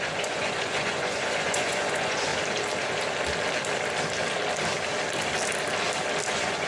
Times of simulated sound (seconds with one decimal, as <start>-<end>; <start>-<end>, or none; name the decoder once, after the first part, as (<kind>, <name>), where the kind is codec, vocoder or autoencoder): 0.0-2.3 (vocoder, Vocos); 6.3-6.7